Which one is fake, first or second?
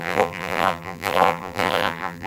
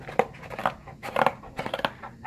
first